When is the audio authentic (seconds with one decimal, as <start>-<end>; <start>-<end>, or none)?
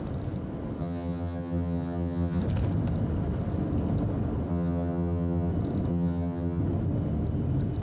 0.0-0.8; 2.4-4.5; 5.5-5.9; 6.6-7.8